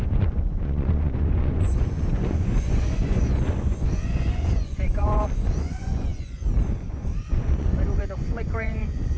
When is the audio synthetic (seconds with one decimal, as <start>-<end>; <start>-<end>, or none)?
0.0-9.2